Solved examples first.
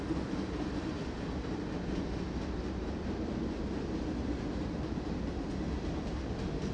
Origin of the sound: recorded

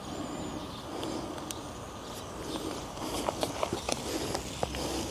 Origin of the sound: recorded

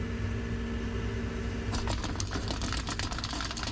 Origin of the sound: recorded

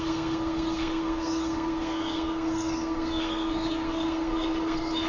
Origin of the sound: remade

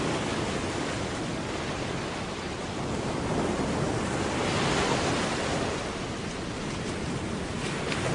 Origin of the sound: recorded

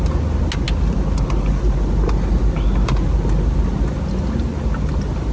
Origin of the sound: recorded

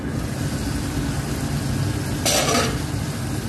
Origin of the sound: recorded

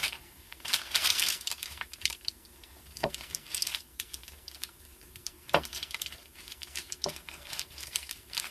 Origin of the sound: remade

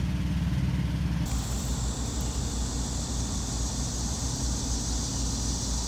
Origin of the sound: recorded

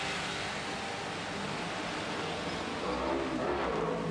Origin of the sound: recorded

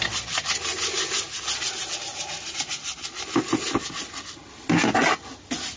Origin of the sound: recorded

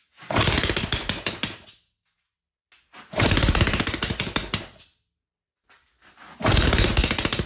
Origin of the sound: recorded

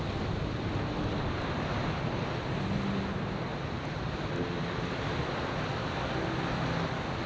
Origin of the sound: recorded